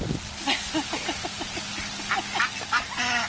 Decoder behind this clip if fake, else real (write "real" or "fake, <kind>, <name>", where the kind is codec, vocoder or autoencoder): real